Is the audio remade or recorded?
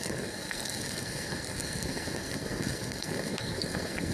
remade